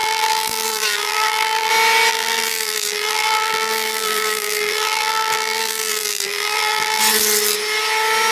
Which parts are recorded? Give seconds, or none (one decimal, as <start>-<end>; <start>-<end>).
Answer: 1.7-2.1; 7.0-8.3